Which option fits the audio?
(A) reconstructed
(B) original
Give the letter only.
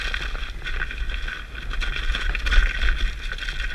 B